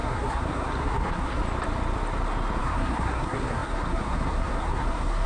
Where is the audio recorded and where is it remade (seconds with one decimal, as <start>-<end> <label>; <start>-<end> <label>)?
0.0-1.4 remade; 1.4-2.6 recorded; 2.6-5.3 remade